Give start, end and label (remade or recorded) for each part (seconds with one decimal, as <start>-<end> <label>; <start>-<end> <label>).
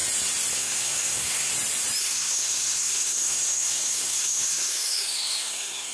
0.0-0.5 recorded; 0.5-1.5 remade; 1.5-2.0 recorded; 2.0-5.9 remade